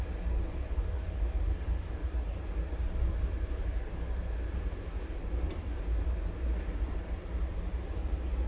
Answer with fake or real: real